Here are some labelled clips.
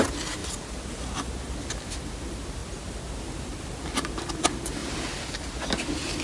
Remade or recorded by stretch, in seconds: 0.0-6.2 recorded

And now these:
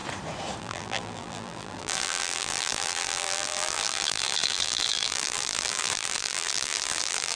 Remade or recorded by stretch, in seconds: 0.0-0.6 recorded; 0.6-7.4 remade

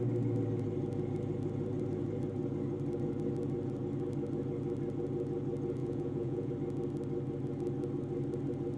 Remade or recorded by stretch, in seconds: 0.0-5.8 recorded; 5.8-6.5 remade; 6.5-8.8 recorded

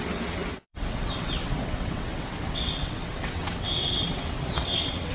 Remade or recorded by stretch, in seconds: 0.0-5.1 remade

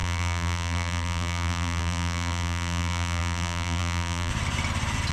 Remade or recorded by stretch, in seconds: 0.0-4.3 remade; 4.3-5.1 recorded

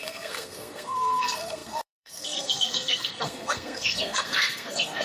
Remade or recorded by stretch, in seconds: 0.0-5.0 remade

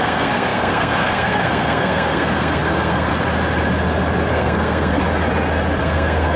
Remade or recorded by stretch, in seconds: 0.0-3.1 remade; 3.1-4.3 recorded; 4.3-5.0 remade; 5.0-5.8 recorded; 5.8-6.4 remade